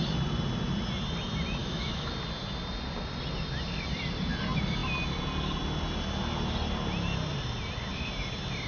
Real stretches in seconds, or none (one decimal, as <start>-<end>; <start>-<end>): 0.0-1.6; 2.1-8.7